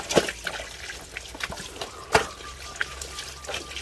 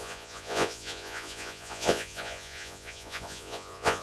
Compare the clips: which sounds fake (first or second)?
second